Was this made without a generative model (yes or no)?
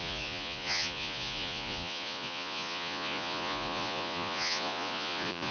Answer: no